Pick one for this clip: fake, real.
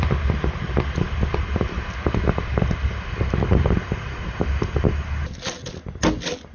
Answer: real